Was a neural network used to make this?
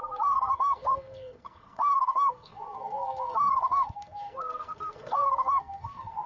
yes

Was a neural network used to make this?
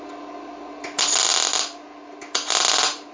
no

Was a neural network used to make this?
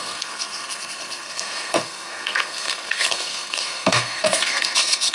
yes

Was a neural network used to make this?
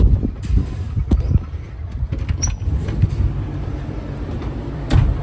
yes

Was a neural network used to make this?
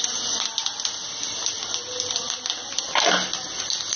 no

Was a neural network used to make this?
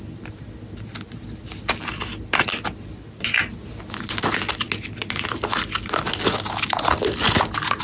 no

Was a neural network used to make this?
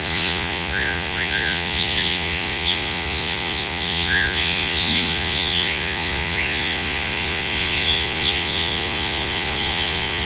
yes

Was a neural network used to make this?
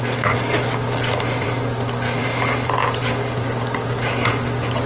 no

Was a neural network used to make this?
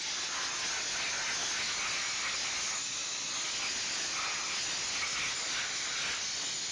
no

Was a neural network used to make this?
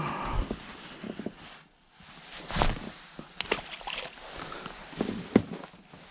no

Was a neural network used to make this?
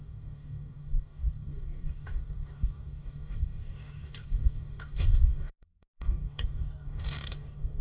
yes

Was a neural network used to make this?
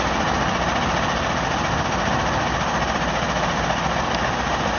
no